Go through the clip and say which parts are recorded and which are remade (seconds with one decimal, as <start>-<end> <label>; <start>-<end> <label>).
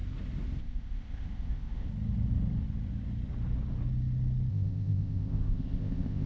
0.0-0.6 recorded; 0.6-1.9 remade; 1.9-4.5 recorded; 4.5-6.3 remade